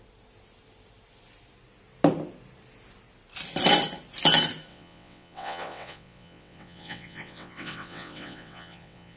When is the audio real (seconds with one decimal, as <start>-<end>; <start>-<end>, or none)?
0.0-4.7